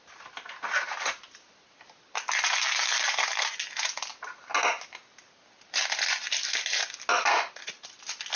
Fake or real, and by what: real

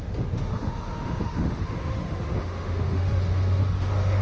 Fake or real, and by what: fake, autoencoder, DAC-VAE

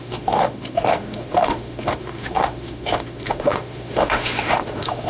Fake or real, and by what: fake, autoencoder, DAC-VAE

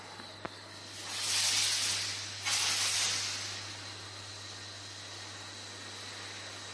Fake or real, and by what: real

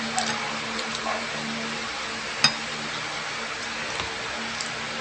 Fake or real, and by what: real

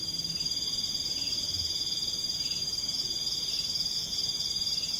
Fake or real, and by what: real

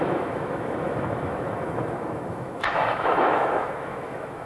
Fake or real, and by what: fake, autoencoder, DAC-VAE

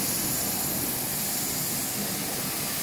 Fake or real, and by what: real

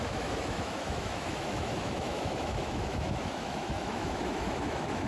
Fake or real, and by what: fake, autoencoder, DAC-VAE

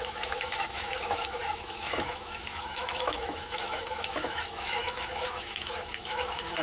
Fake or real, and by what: fake, autoencoder, DAC-VAE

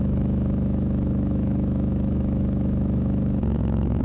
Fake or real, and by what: fake, autoencoder, DAC-VAE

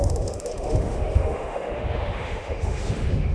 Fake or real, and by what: fake, autoencoder, DAC-VAE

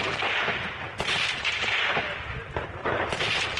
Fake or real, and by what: real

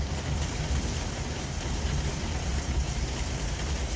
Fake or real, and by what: real